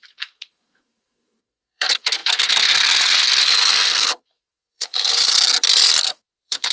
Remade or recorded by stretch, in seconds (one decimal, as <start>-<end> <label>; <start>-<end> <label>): 0.0-4.9 remade; 4.9-6.0 recorded; 6.0-6.7 remade